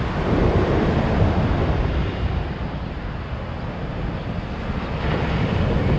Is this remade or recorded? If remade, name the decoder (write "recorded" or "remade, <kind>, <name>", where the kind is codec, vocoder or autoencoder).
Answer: recorded